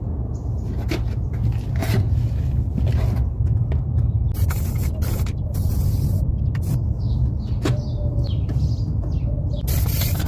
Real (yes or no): yes